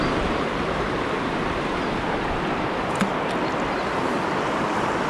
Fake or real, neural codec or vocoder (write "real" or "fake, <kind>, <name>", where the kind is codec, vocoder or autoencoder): real